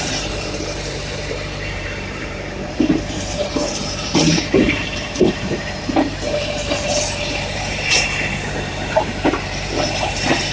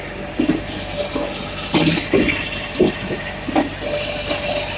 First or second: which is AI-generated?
first